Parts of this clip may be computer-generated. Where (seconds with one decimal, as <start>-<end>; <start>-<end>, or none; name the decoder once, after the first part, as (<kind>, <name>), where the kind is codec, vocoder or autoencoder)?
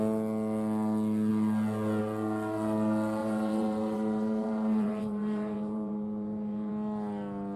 3.2-6.7 (vocoder, BigVGAN v2)